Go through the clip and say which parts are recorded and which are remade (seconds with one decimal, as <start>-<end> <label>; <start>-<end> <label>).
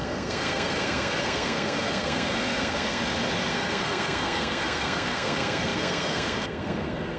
0.0-3.0 remade; 3.0-3.5 recorded; 3.5-7.2 remade